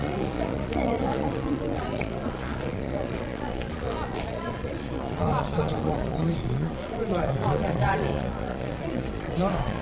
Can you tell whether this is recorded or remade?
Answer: remade